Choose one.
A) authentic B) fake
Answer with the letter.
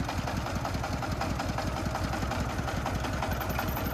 A